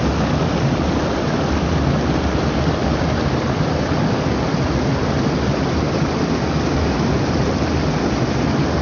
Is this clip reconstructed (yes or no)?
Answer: no